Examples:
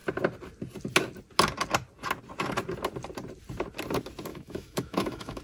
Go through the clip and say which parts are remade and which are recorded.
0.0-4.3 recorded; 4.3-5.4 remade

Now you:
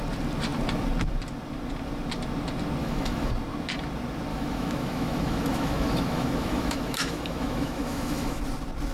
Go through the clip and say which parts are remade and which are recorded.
0.0-2.8 recorded; 2.8-3.3 remade; 3.3-4.3 recorded; 4.3-8.4 remade; 8.4-8.9 recorded

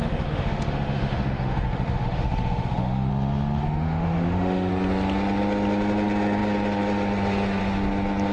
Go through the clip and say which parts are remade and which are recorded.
0.0-3.1 remade; 3.1-3.6 recorded; 3.6-4.7 remade; 4.7-8.3 recorded

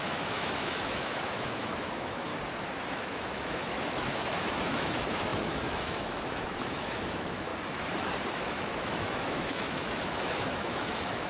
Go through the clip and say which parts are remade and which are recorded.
0.0-2.3 remade; 2.3-2.9 recorded; 2.9-7.5 remade; 7.5-8.3 recorded; 8.3-11.3 remade

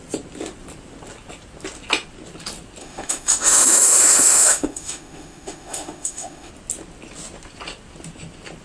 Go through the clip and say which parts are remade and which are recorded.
0.0-2.8 recorded; 2.8-6.5 remade; 6.5-8.6 recorded

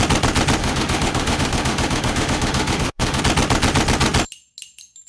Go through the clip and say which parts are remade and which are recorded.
0.0-0.6 recorded; 0.6-3.2 remade; 3.2-5.1 recorded

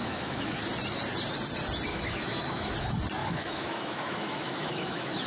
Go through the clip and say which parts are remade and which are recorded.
0.0-0.6 remade; 0.6-1.9 recorded; 1.9-2.7 remade; 2.7-3.2 recorded; 3.2-5.3 remade